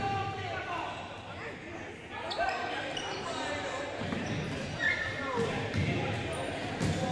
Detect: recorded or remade recorded